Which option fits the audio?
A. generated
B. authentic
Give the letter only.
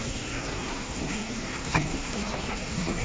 A